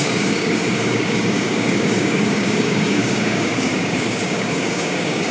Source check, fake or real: fake